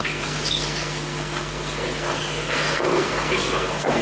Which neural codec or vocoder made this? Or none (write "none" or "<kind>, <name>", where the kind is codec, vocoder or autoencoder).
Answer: codec, SNAC